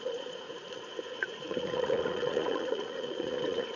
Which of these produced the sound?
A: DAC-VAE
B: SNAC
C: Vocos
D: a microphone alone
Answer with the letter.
C